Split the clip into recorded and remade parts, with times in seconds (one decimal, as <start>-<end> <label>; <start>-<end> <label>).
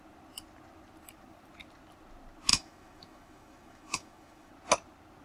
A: 0.0-2.5 recorded; 2.5-4.5 remade; 4.5-5.2 recorded